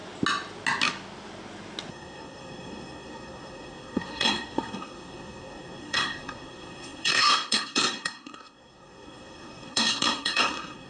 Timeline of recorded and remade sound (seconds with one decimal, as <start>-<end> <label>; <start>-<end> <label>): 0.0-1.9 recorded; 1.9-10.9 remade